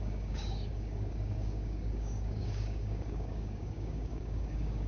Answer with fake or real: fake